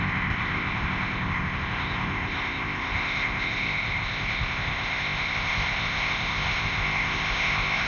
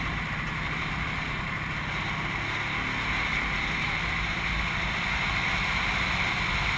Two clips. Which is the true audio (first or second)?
second